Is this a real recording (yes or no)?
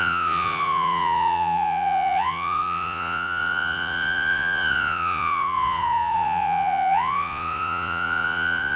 no